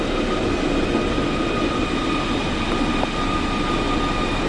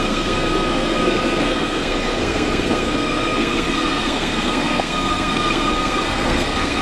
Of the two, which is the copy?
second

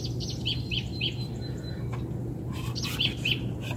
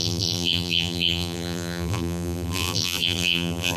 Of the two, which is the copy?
second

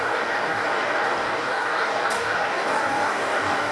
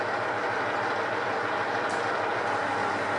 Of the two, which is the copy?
first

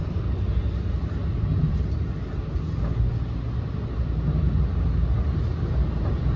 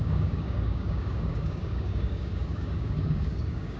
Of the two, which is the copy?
second